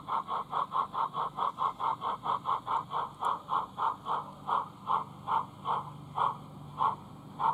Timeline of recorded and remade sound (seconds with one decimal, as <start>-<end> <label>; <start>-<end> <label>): 0.0-7.5 recorded